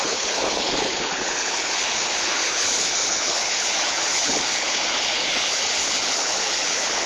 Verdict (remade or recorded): remade